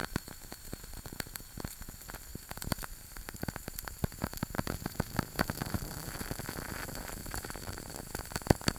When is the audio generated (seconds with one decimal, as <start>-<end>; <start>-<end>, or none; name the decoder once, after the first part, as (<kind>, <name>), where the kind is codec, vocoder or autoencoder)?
0.0-1.6 (vocoder, BigVGAN v2); 2.3-6.2; 7.2-8.0